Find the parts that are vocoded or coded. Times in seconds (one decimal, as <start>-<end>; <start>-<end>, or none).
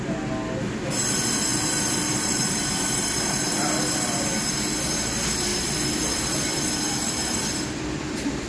1.5-4.3; 5.5-8.0